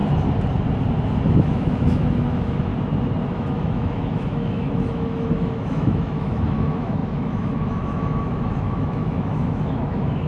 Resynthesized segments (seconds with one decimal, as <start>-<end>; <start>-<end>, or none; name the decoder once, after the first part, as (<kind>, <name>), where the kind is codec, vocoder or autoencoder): 1.3-2.7 (autoencoder, DAC-VAE); 3.3-10.3

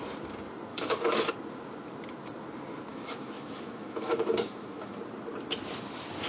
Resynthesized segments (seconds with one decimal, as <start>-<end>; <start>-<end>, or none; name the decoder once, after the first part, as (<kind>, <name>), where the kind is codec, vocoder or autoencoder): 0.7-1.3 (autoencoder, DAC-VAE); 2.9-5.0

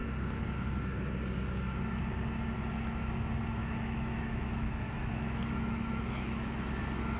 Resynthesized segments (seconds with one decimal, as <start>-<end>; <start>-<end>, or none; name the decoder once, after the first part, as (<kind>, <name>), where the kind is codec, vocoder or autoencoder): 3.6-6.7 (autoencoder, DAC-VAE)

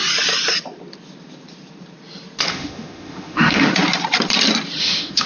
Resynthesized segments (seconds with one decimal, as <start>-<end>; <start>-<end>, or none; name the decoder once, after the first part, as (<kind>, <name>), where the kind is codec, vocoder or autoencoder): 2.5-3.7 (autoencoder, DAC-VAE); 4.8-5.3